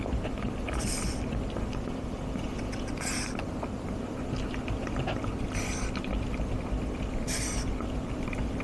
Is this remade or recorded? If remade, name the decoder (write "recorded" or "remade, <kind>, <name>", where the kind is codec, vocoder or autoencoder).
recorded